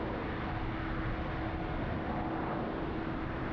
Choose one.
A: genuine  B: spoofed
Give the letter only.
A